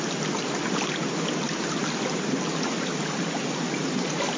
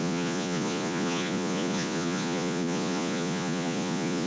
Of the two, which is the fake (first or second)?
second